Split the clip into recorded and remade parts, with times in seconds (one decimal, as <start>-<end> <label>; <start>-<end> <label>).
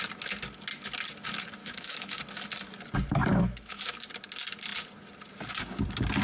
0.0-1.6 recorded; 1.6-2.2 remade; 2.2-3.3 recorded; 3.3-4.0 remade; 4.0-6.2 recorded